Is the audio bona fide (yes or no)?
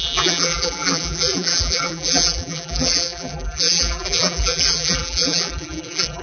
no